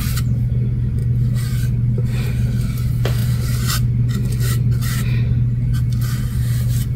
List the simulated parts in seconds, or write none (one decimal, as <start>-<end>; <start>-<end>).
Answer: none